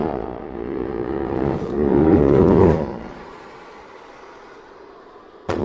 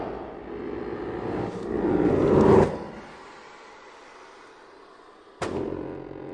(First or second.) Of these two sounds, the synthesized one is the first